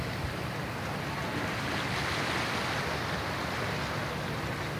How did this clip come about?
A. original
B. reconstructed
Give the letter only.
A